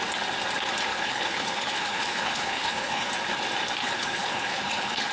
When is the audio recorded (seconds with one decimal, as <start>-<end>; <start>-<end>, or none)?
0.0-0.9; 3.1-3.8